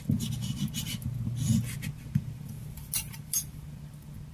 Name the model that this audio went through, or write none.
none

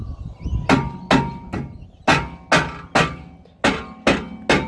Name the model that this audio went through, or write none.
none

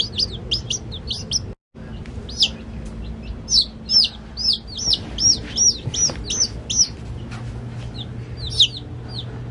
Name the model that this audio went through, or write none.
none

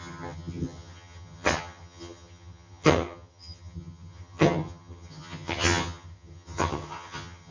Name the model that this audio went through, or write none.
vocoder, HiFi-GAN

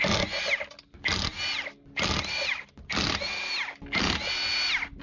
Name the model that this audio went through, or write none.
none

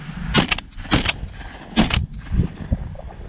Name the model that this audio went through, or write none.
none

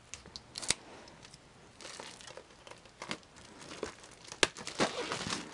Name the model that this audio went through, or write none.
none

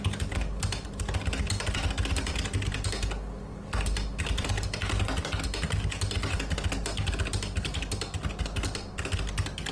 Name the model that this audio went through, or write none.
none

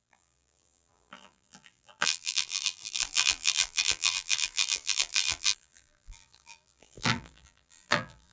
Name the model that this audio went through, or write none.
vocoder, BigVGAN v2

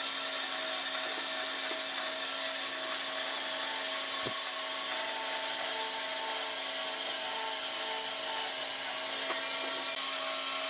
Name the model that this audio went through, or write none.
none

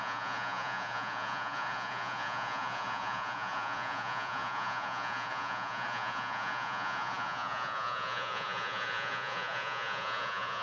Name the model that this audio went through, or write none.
vocoder, Vocos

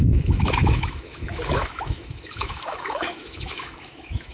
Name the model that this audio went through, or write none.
autoencoder, DAC-VAE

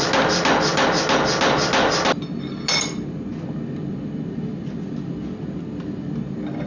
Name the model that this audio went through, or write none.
none